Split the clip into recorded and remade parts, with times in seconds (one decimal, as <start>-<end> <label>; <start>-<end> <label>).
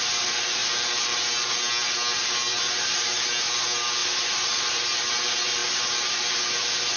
0.0-2.5 recorded; 2.5-3.1 remade; 3.1-4.0 recorded; 4.0-4.6 remade; 4.6-7.0 recorded